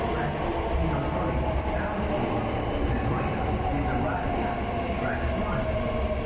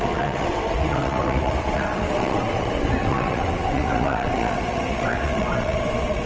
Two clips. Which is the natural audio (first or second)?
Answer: first